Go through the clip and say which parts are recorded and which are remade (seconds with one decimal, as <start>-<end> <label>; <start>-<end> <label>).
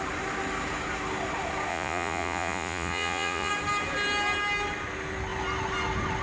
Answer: 0.0-1.7 recorded; 1.7-3.5 remade; 3.5-6.2 recorded